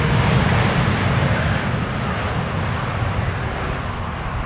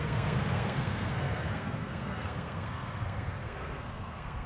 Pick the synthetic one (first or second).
second